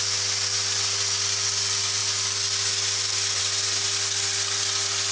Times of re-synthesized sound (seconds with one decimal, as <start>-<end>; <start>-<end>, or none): none

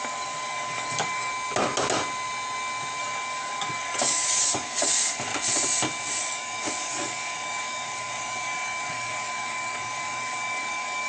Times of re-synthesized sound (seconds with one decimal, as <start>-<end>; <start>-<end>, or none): 0.0-1.3; 3.0-5.3; 6.2-11.1

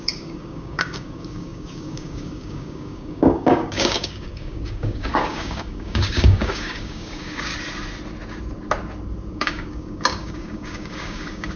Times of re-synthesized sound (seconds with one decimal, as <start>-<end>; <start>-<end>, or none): 0.0-7.5; 9.3-11.6